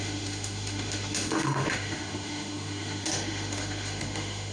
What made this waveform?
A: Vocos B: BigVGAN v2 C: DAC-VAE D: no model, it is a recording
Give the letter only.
C